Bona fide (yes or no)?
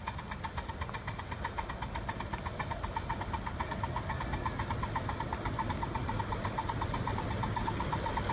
yes